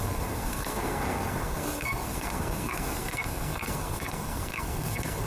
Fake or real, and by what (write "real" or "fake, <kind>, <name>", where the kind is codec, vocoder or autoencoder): fake, codec, SNAC